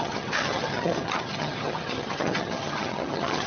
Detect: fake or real fake